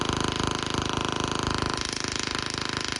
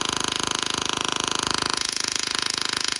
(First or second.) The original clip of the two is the first